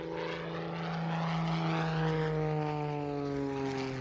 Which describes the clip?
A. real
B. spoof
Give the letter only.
A